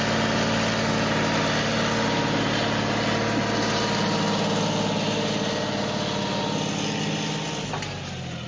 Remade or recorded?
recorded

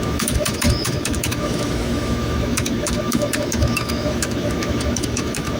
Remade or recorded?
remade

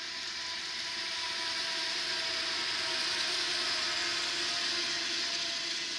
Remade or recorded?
recorded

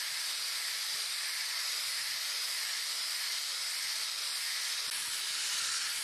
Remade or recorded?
recorded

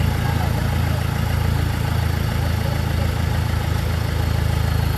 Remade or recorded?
recorded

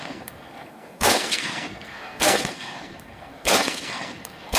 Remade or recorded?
remade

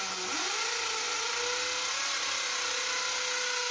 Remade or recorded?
recorded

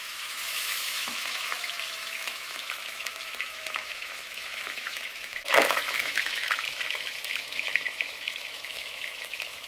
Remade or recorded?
remade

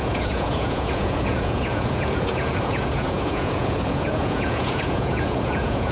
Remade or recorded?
remade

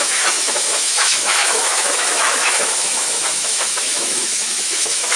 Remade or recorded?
remade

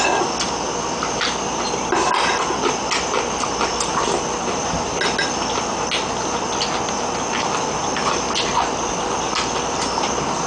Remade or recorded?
recorded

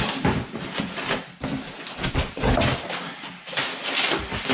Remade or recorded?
recorded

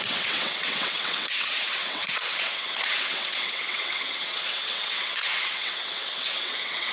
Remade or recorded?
remade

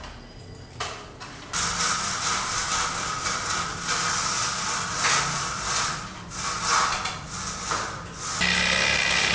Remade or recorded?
recorded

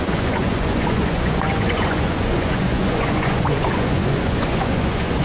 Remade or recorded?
remade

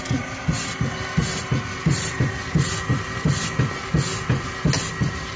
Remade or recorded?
recorded